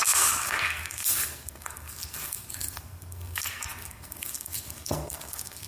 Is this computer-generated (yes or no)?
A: yes